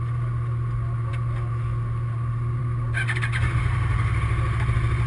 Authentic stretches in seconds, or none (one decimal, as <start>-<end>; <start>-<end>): 0.0-5.1